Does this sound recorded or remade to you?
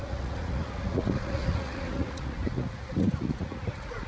remade